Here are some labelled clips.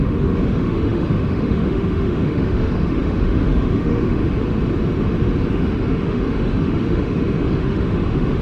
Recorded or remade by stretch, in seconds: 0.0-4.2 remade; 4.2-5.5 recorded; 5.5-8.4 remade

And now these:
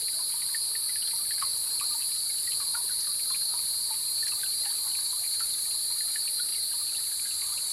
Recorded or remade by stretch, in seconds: 0.0-7.7 recorded

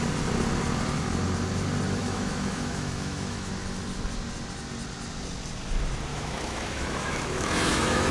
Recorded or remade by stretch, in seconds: 0.0-2.0 recorded; 2.0-3.5 remade; 3.5-6.1 recorded; 6.1-8.1 remade

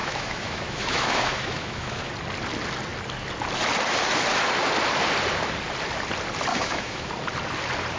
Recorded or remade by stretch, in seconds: 0.0-2.1 remade; 2.1-6.5 recorded; 6.5-7.1 remade; 7.1-8.0 recorded

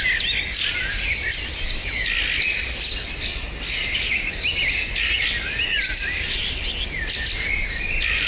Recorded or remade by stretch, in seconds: 0.0-8.3 recorded

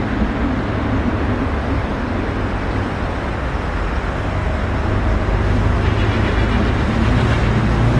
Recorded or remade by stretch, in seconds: 0.0-8.0 recorded

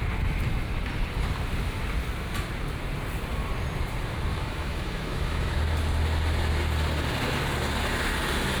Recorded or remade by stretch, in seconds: 0.0-4.3 recorded; 4.3-5.6 remade; 5.6-8.6 recorded